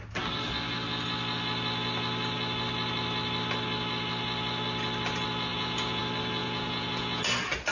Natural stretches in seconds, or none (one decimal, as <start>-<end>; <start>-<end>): 0.0-5.5; 6.0-6.4; 7.2-7.7